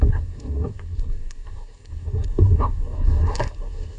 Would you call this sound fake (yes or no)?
yes